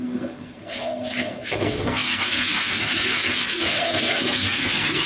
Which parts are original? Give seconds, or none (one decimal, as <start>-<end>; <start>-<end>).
none

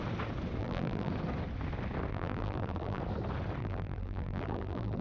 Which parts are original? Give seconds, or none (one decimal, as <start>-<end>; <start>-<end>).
0.0-0.6; 1.1-2.1; 3.0-3.6

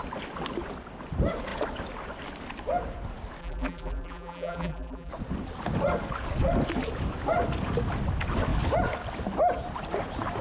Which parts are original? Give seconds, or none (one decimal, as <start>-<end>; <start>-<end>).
0.0-3.4; 5.1-10.4

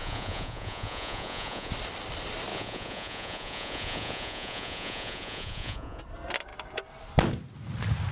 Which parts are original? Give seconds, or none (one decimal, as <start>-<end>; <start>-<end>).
1.7-2.5; 6.0-8.1

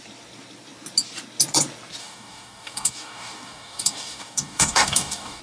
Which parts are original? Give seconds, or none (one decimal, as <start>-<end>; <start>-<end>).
0.0-2.0

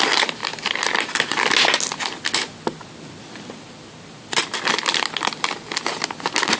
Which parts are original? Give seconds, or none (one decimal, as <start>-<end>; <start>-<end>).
0.0-6.6

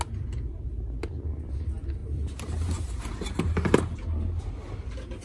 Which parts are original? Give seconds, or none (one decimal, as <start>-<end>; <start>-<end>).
0.0-2.0; 4.4-5.2